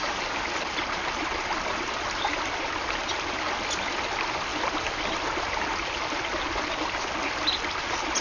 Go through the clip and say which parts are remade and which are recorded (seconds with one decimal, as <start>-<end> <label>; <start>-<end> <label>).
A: 0.0-8.2 recorded